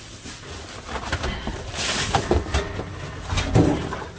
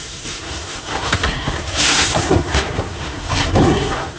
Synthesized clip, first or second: second